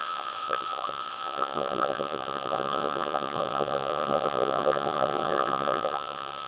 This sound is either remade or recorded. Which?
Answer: remade